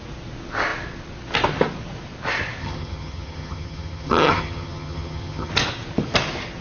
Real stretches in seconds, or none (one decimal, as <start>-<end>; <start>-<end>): 0.0-2.6; 5.5-6.6

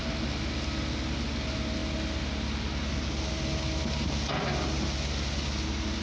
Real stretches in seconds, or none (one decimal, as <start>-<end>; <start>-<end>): 0.0-6.0